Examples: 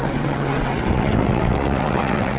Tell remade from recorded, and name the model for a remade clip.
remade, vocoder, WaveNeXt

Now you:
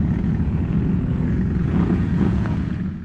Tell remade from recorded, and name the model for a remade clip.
remade, vocoder, Vocos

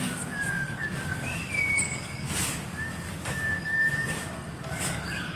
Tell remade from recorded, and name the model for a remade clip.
remade, codec, DAC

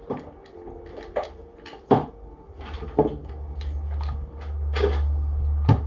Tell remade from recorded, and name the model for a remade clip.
recorded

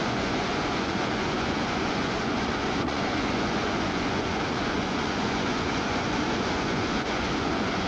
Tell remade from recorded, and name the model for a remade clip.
remade, vocoder, Vocos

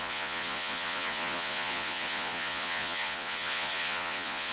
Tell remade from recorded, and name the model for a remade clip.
remade, vocoder, Vocos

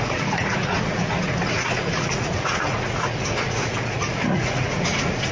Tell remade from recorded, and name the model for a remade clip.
remade, vocoder, Vocos